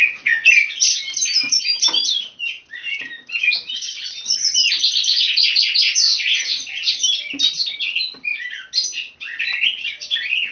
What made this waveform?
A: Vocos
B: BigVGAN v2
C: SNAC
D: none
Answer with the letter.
D